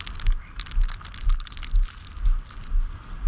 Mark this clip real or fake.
real